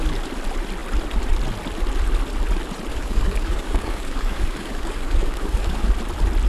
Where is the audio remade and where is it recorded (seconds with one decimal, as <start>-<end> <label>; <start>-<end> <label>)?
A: 0.0-2.9 recorded; 2.9-5.9 remade; 5.9-6.5 recorded